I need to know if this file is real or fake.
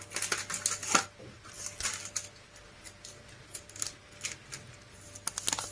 real